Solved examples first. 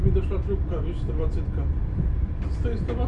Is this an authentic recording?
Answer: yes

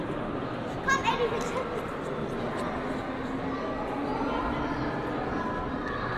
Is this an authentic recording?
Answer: yes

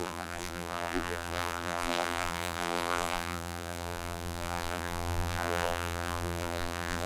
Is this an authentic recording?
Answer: no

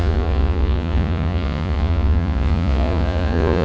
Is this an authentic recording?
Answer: no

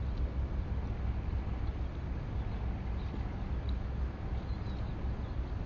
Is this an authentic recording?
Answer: yes